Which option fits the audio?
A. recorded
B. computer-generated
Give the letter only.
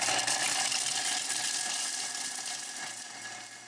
A